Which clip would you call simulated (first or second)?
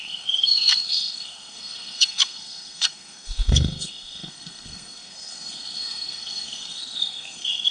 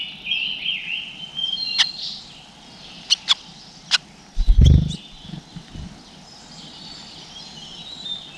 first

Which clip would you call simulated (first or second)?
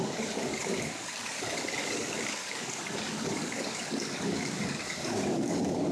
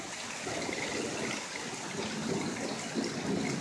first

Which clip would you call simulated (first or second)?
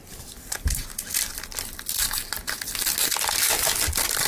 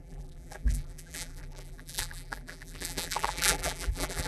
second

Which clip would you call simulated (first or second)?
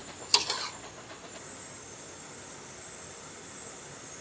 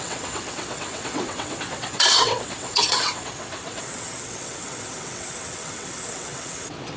second